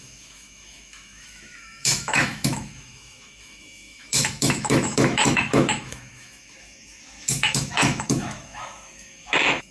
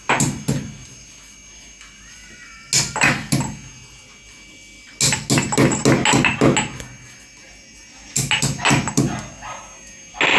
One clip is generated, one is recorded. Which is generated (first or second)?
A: first